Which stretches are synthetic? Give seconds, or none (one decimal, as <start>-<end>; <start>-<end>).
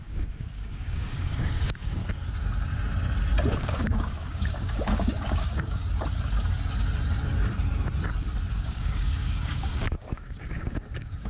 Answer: 0.0-2.0; 3.6-5.8; 8.5-11.3